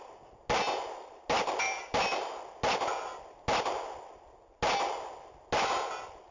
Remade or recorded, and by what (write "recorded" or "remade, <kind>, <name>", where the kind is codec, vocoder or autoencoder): recorded